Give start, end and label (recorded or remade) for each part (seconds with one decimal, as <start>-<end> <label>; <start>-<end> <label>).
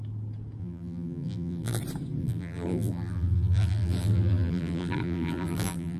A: 0.0-0.6 recorded; 0.6-1.8 remade; 1.8-2.2 recorded; 2.2-6.0 remade